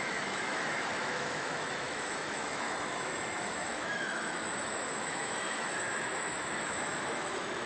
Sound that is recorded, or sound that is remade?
remade